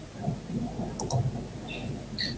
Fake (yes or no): no